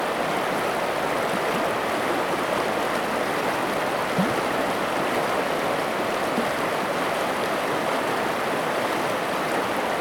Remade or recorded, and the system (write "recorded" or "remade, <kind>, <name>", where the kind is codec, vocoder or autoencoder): recorded